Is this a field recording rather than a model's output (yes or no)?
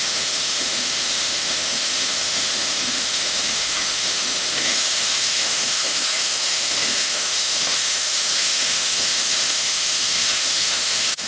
no